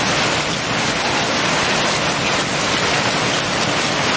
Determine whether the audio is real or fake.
real